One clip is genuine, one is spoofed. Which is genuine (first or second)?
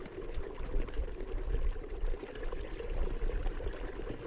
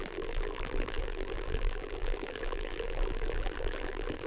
first